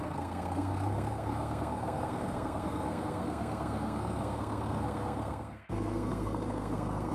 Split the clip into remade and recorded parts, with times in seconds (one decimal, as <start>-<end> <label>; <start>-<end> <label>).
0.0-7.1 remade